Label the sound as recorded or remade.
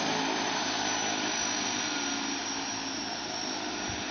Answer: recorded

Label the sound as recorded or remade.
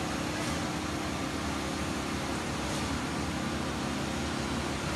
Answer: recorded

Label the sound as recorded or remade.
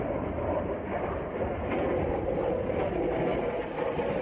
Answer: recorded